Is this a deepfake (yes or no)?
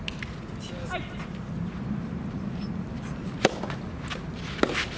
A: no